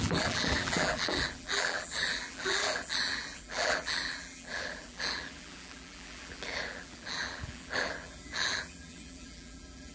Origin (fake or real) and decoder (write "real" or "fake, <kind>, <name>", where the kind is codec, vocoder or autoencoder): fake, vocoder, BigVGAN v2